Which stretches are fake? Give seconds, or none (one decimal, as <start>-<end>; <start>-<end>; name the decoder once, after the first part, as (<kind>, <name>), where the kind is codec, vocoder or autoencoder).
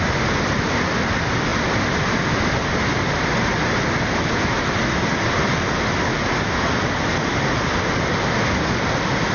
none